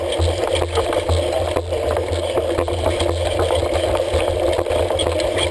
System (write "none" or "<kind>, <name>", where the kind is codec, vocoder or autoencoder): none